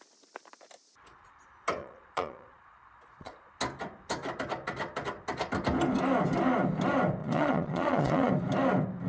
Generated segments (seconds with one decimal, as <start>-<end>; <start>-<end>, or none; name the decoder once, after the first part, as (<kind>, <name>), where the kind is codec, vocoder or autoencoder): 1.8-3.5 (vocoder, Vocos); 7.2-8.3